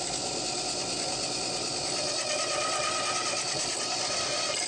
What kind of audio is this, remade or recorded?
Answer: recorded